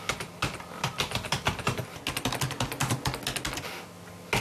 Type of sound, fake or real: real